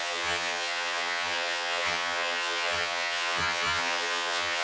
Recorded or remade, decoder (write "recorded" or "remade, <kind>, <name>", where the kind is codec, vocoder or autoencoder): remade, vocoder, HiFi-GAN